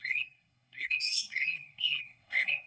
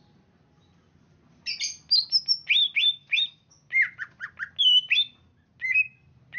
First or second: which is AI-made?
first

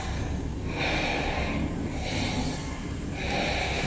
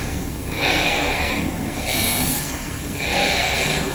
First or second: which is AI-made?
second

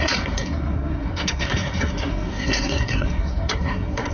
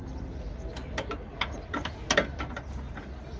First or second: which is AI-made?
first